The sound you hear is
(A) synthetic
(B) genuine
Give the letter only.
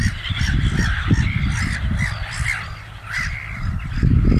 A